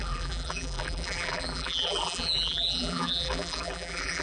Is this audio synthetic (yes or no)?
yes